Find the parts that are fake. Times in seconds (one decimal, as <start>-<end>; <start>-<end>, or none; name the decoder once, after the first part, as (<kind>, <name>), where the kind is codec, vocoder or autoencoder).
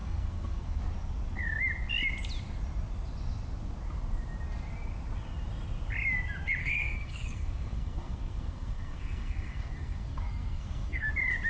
0.0-0.8 (codec, SNAC); 6.6-11.1